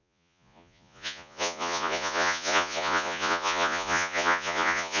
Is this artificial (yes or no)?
yes